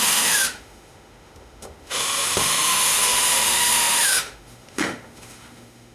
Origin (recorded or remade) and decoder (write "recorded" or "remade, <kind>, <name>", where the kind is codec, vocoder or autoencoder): remade, autoencoder, DAC-VAE